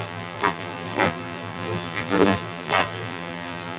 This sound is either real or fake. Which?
fake